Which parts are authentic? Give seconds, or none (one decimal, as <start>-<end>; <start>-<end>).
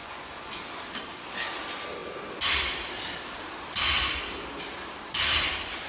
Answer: 0.6-5.9